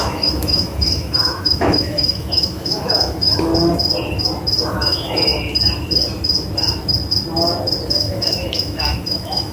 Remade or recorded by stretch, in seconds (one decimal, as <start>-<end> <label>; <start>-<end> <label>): 0.0-3.5 remade; 3.5-4.7 recorded; 4.7-5.3 remade; 5.3-7.9 recorded; 7.9-9.5 remade